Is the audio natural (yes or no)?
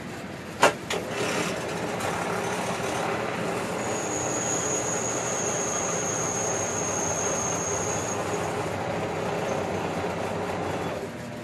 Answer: yes